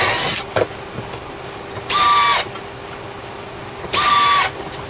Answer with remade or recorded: recorded